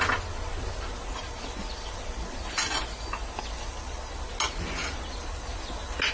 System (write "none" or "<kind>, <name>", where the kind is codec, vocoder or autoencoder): none